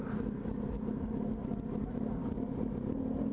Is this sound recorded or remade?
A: recorded